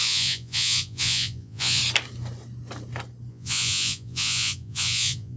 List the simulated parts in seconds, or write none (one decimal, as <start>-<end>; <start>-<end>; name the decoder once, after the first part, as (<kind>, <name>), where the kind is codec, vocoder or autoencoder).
0.0-1.8 (vocoder, Vocos); 3.3-5.4